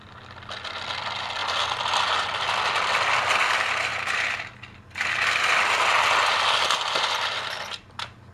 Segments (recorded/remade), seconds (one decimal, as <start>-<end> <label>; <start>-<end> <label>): 0.0-8.3 recorded